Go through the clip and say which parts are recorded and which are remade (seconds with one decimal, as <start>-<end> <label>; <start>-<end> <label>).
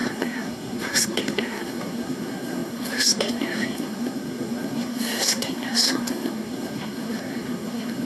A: 0.0-8.0 remade